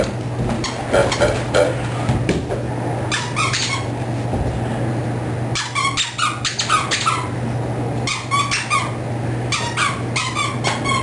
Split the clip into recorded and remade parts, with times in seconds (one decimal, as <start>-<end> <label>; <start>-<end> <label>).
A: 0.0-1.0 recorded; 1.0-3.8 remade; 3.8-11.0 recorded